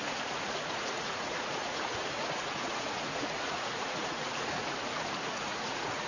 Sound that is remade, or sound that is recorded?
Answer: remade